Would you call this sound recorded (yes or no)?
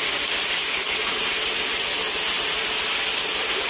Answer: yes